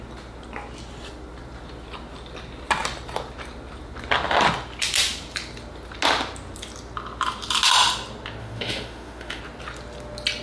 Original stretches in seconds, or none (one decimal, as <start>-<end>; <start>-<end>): 0.0-8.4; 9.4-10.4